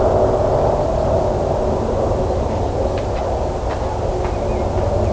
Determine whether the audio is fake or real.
real